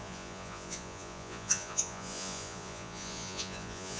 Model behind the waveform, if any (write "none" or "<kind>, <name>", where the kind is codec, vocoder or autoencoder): vocoder, Vocos